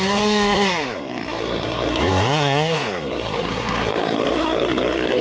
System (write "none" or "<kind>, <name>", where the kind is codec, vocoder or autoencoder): codec, SNAC